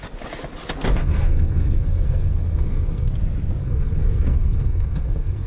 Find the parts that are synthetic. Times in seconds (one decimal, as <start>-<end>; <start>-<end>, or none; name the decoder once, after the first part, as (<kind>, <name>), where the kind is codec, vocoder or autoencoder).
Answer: 1.0-3.1 (codec, SNAC); 3.6-5.5